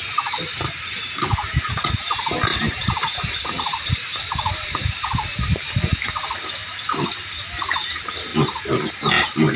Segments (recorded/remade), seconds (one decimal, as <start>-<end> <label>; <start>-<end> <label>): 0.0-2.5 recorded; 2.5-5.7 remade; 5.7-8.3 recorded; 8.3-8.9 remade; 8.9-9.6 recorded